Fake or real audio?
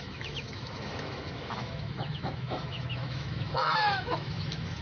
fake